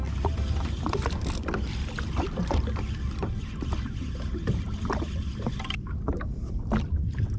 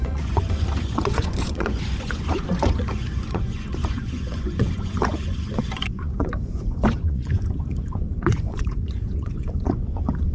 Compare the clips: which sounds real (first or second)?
first